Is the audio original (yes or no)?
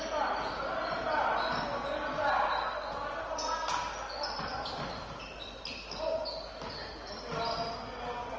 yes